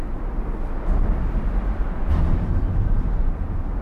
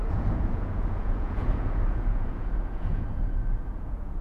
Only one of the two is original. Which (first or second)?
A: first